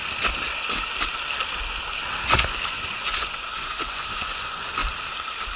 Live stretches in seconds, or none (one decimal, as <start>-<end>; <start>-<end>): 0.0-2.7; 4.8-5.6

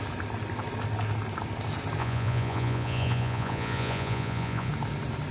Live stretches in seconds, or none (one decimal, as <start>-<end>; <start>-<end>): 0.0-2.0; 4.7-5.3